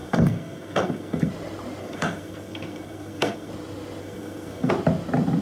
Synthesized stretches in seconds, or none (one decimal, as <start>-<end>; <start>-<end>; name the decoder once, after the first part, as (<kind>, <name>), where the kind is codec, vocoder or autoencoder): 0.0-1.3 (codec, SNAC); 1.8-3.5; 4.0-4.7